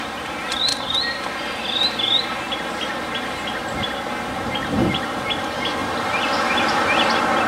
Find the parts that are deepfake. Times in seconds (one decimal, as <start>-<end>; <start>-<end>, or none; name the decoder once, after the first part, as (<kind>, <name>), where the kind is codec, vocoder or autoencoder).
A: 0.7-1.2 (vocoder, BigVGAN v2)